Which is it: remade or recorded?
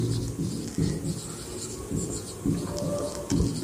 recorded